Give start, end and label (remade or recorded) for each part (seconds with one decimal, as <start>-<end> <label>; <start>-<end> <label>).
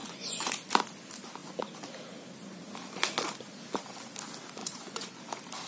0.0-0.5 remade; 0.5-4.6 recorded; 4.6-5.2 remade; 5.2-5.7 recorded